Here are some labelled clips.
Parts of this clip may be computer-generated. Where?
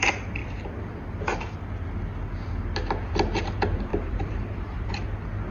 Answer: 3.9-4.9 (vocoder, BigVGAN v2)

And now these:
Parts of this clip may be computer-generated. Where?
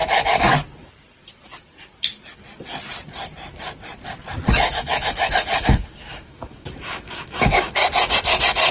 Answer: 4.5-7.8 (autoencoder, DAC-VAE)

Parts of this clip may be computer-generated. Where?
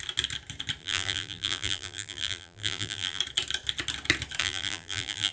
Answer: 0.8-3.2 (vocoder, BigVGAN v2); 4.4-5.3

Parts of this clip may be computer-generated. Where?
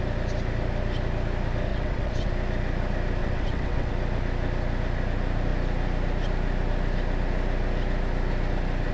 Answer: 1.7-2.3 (vocoder, WaveNeXt); 3.2-3.9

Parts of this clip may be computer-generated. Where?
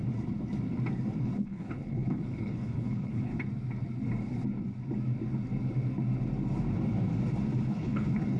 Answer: 1.2-3.3 (codec, HILCodec); 7.7-8.4